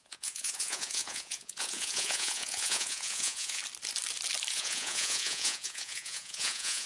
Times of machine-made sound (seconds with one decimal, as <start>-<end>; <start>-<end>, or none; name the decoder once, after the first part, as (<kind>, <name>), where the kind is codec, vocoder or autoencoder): 0.0-3.6 (vocoder, Vocos); 4.5-6.9